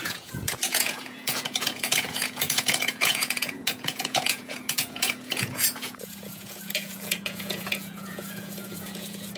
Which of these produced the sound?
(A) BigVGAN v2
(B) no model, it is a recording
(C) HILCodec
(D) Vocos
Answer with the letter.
D